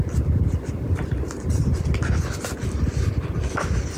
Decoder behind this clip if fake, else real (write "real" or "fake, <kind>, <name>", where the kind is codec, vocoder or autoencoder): fake, vocoder, BigVGAN v2